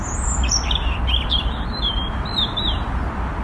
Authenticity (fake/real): fake